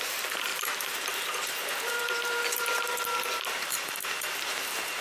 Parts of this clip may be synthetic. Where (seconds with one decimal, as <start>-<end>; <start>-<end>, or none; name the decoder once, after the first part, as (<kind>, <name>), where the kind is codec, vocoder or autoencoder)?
0.0-5.0 (vocoder, BigVGAN v2)